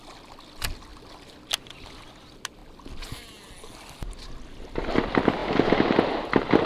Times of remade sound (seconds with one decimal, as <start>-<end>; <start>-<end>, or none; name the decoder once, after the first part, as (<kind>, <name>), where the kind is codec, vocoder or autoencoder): none

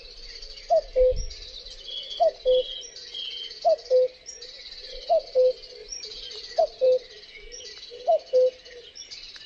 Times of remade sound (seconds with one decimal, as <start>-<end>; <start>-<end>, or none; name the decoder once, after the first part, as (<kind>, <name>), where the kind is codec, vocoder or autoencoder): none